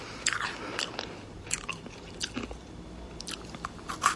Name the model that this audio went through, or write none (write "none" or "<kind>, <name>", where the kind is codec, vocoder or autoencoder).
none